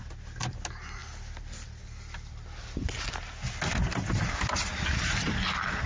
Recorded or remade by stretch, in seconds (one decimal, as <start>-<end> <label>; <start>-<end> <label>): 0.0-5.9 recorded